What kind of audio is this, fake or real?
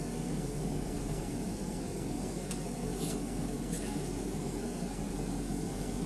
fake